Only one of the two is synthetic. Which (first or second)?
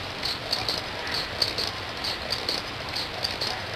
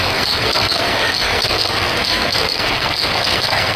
second